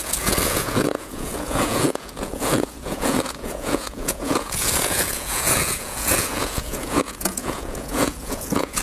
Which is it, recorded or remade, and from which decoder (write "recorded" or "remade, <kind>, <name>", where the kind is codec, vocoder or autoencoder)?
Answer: remade, vocoder, Vocos